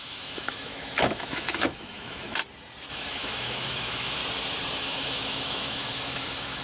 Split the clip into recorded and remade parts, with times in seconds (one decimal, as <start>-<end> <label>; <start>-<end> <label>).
0.0-2.4 remade; 2.4-2.9 recorded; 2.9-4.2 remade; 4.2-4.8 recorded; 4.8-6.6 remade